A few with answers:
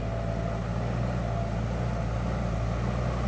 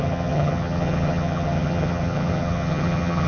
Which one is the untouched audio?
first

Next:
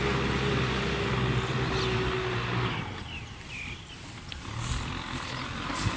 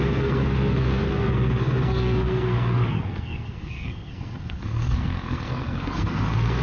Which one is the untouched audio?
first